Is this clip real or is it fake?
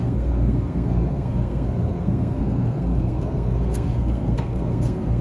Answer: fake